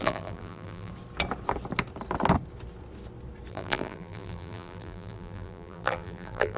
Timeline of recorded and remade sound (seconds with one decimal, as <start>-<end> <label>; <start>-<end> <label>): 0.0-0.9 remade; 0.9-3.5 recorded; 3.5-6.6 remade